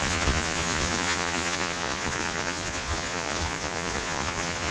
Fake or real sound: fake